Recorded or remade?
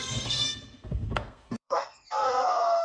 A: remade